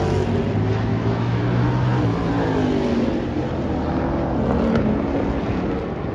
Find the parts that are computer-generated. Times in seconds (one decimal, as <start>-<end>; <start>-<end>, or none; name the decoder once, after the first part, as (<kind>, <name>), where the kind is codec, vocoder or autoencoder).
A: 0.9-1.4 (autoencoder, DAC-VAE)